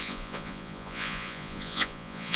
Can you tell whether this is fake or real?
fake